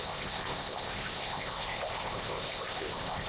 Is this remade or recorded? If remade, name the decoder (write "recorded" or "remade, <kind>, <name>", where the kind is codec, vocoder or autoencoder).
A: remade, codec, ZipCodec